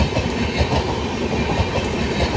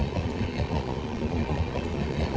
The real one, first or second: first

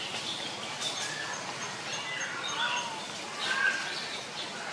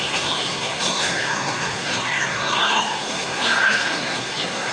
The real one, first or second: first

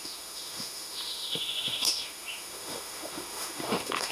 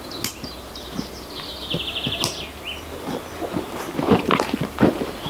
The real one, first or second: second